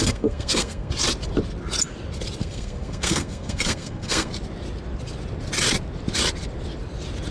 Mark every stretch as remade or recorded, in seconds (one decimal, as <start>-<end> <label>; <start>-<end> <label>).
0.0-0.9 remade; 0.9-2.4 recorded; 2.4-4.3 remade; 4.3-7.3 recorded